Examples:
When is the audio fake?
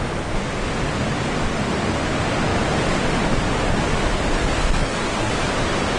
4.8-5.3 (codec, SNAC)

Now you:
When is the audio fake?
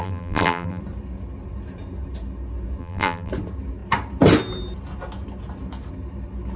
0.0-0.8 (vocoder, BigVGAN v2); 2.8-3.3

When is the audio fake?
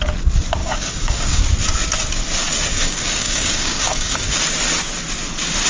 0.6-1.4 (codec, DAC); 2.7-4.4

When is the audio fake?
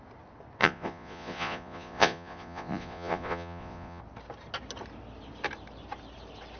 0.6-4.0 (vocoder, Vocos)